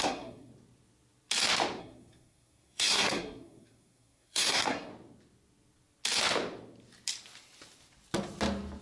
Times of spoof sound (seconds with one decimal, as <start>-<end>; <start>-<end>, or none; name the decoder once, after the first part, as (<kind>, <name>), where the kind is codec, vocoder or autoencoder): 0.0-0.5 (codec, SNAC); 1.8-4.9